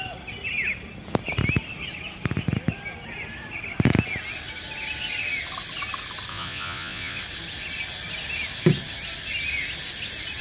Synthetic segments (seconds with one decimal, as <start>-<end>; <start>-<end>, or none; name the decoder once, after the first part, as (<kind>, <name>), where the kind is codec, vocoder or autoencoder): 6.3-7.2 (vocoder, Vocos)